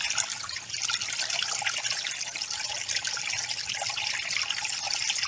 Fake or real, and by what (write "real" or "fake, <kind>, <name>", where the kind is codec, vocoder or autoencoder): real